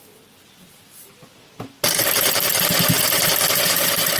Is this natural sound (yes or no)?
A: yes